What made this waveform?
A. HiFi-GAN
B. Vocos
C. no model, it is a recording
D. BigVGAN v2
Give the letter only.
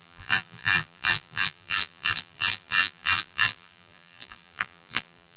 D